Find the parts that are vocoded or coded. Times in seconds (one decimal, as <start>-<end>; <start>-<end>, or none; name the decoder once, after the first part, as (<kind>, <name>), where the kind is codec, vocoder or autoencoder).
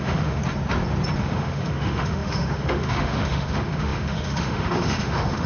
0.0-0.4 (autoencoder, DAC-VAE); 1.2-5.5